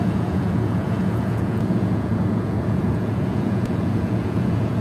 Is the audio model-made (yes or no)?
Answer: yes